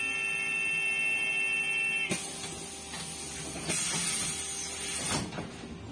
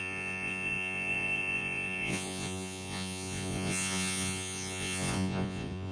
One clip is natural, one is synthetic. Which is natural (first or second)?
first